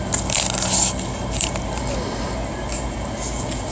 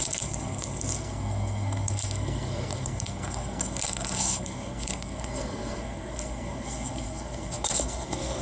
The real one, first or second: first